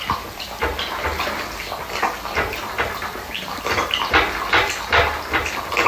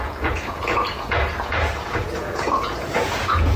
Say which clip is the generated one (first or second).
second